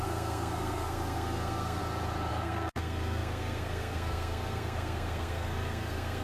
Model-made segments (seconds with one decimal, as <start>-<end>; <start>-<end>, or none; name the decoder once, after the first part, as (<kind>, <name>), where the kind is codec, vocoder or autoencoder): 0.0-1.8 (codec, SNAC); 2.3-6.2